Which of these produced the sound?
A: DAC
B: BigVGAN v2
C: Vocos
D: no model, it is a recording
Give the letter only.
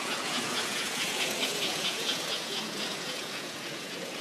C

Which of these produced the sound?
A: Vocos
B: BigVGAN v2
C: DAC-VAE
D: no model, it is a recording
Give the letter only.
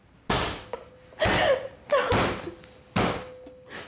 D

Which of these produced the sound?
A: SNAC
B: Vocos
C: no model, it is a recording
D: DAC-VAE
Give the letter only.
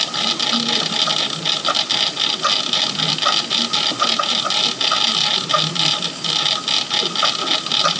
C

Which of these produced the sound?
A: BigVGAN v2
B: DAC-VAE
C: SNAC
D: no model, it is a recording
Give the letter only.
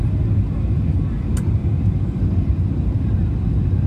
D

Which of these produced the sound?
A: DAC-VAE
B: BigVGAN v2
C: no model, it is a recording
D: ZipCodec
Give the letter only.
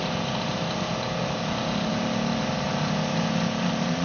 C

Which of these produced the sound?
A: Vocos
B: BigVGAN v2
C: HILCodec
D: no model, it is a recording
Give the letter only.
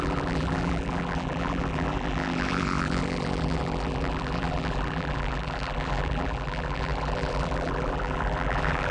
B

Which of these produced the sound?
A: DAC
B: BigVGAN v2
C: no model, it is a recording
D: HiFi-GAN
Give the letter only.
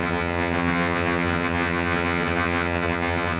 D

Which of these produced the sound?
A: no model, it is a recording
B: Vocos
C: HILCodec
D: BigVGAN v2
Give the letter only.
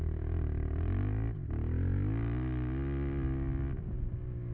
A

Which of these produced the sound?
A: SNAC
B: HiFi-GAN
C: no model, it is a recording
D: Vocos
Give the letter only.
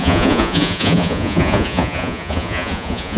D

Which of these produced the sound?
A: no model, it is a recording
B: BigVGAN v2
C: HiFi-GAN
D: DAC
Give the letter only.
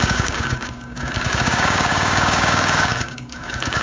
D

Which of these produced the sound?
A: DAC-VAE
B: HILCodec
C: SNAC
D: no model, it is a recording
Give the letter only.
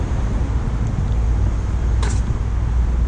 D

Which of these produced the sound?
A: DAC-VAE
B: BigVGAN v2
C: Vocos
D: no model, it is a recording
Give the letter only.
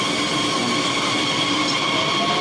D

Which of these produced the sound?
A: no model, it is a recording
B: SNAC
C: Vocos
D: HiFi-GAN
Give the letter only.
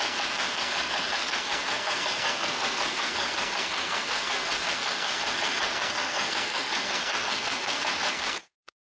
B